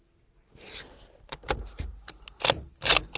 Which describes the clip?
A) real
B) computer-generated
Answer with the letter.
A